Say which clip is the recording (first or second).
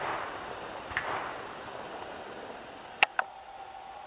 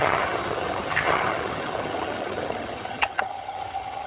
first